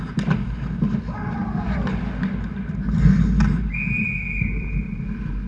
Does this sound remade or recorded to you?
recorded